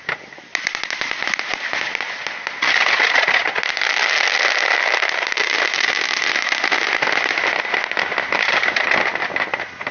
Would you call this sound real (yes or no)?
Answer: yes